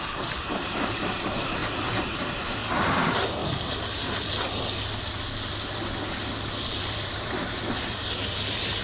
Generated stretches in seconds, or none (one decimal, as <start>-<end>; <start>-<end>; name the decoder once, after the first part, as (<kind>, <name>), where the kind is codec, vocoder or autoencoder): 0.0-3.4 (vocoder, BigVGAN v2); 6.8-8.8